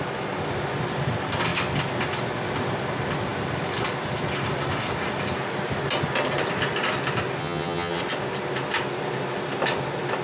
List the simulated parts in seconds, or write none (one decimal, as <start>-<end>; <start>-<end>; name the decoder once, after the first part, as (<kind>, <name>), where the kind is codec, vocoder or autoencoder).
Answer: 7.4-8.0 (vocoder, HiFi-GAN)